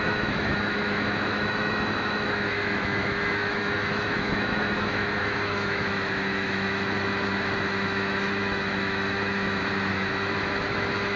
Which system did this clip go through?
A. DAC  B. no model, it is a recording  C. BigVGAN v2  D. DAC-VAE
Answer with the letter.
D